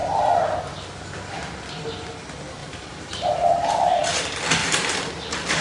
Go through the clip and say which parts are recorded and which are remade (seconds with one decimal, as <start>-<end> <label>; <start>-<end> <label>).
0.0-2.6 recorded; 2.6-4.0 remade; 4.0-4.6 recorded; 4.6-5.1 remade; 5.1-5.6 recorded